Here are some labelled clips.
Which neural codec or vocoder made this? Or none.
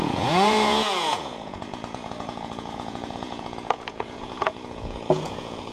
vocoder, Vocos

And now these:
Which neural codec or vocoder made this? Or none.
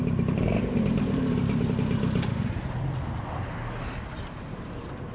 vocoder, BigVGAN v2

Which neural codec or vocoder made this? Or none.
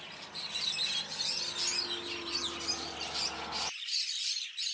none